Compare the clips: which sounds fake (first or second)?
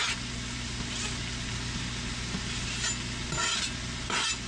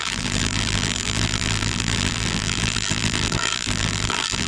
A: second